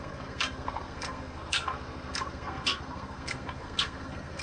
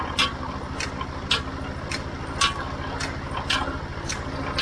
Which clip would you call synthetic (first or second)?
first